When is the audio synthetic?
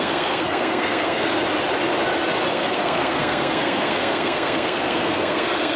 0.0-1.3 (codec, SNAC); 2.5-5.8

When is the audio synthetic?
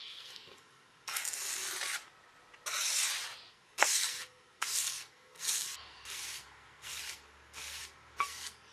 0.0-1.2 (codec, SNAC); 3.5-8.7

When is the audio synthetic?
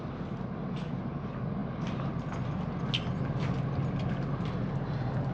none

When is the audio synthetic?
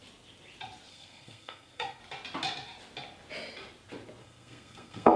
0.9-2.0 (codec, SNAC); 4.2-5.2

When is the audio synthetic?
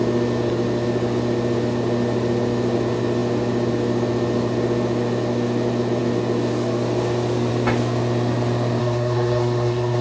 8.8-10.0 (codec, SNAC)